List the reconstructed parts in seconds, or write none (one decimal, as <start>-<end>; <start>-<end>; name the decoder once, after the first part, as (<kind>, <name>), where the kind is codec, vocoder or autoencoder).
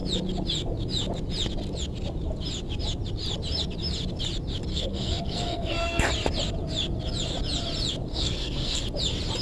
4.7-6.1 (codec, SNAC); 8.1-8.8